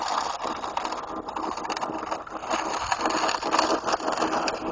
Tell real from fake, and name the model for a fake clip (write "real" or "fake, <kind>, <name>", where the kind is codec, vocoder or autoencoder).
real